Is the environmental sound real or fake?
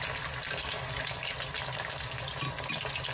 real